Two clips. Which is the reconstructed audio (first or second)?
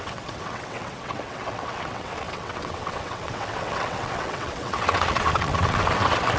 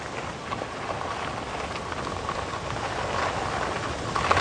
first